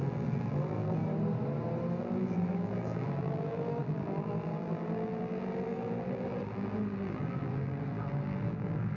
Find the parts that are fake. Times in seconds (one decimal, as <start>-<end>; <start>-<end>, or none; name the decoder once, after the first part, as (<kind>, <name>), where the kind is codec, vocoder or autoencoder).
0.0-1.0 (vocoder, BigVGAN v2); 2.0-9.0